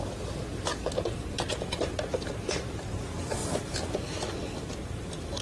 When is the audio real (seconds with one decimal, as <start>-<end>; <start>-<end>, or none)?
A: 0.7-1.5; 3.4-4.8